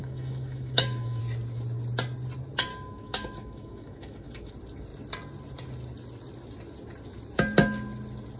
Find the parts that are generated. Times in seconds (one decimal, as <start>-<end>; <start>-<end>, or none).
0.0-1.2; 2.7-4.5